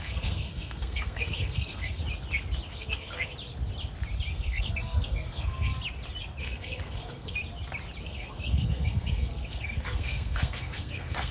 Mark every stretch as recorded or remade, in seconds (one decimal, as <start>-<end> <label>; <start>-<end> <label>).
0.0-2.0 remade; 2.0-2.7 recorded; 2.7-3.3 remade; 3.3-4.3 recorded; 4.3-5.7 remade; 5.7-6.4 recorded; 6.4-7.4 remade; 7.4-8.0 recorded; 8.0-11.3 remade